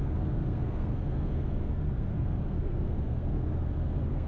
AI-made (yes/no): yes